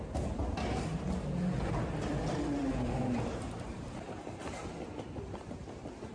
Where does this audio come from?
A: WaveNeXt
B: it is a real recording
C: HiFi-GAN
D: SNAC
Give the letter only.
B